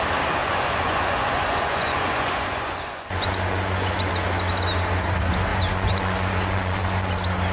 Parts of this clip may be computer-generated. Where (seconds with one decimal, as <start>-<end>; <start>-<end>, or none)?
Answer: 0.4-4.1; 5.5-7.1